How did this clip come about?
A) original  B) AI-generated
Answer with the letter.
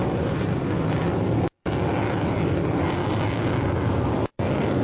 A